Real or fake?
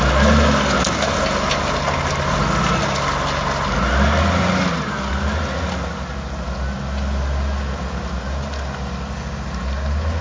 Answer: real